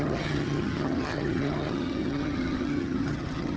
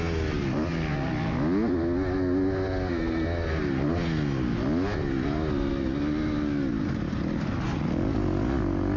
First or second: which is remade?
first